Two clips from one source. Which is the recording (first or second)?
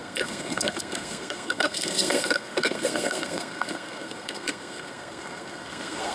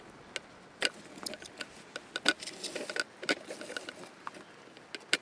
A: second